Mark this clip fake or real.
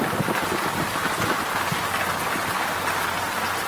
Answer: real